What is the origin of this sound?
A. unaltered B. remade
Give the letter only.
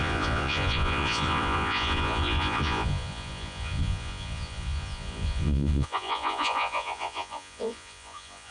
B